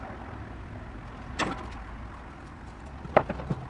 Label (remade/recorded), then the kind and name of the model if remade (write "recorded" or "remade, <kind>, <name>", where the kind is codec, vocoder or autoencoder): remade, vocoder, BigVGAN v2